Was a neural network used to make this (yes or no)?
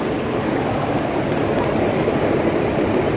no